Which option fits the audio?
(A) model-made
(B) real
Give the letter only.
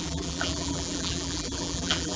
A